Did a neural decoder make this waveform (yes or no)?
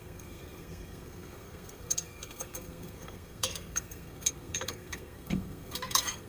yes